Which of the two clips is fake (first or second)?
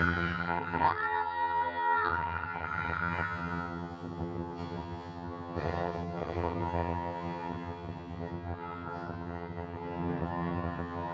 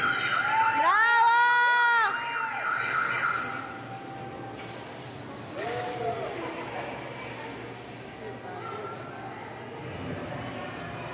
first